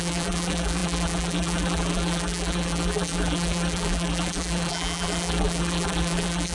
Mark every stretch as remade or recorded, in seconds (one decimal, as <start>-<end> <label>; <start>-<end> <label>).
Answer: 0.0-6.5 remade